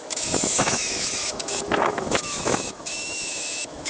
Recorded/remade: remade